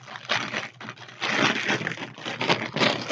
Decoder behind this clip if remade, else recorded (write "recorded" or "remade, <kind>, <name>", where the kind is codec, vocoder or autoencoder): recorded